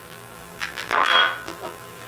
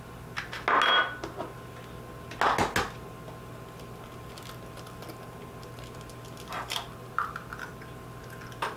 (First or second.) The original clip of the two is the second